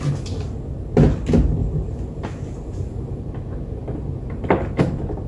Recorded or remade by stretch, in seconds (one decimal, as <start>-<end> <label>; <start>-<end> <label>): 0.0-5.3 recorded